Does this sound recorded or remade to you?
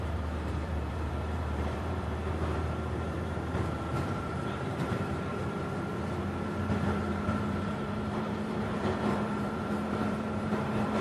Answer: remade